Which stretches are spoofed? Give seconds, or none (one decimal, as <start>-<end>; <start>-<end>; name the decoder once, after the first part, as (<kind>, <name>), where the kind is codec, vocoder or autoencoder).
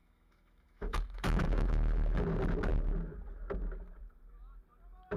0.0-2.2 (autoencoder, DAC-VAE)